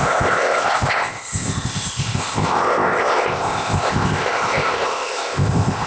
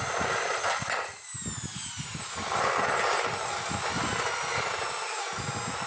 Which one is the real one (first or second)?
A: second